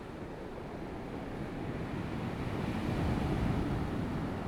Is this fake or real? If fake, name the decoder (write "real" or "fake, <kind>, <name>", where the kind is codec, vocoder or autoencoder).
real